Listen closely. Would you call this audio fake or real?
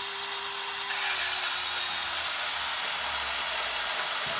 real